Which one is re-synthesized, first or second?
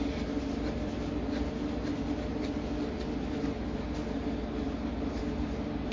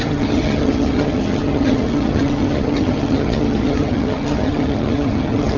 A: second